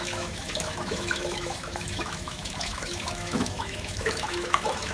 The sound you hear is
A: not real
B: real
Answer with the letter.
A